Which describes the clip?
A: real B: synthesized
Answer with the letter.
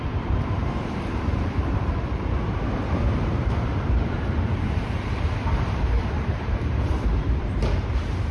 B